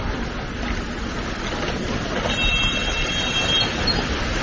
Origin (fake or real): real